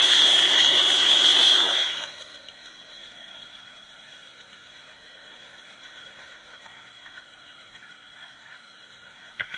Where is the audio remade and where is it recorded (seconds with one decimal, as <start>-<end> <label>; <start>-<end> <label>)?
0.0-9.6 remade